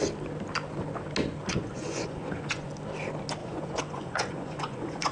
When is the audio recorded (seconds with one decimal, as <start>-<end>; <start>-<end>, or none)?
0.0-1.5; 2.7-3.4